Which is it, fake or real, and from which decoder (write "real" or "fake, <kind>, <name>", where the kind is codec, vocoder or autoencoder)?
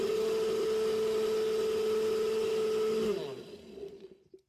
real